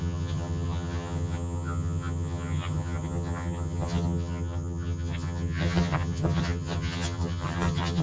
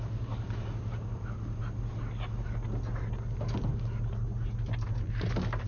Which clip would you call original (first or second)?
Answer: second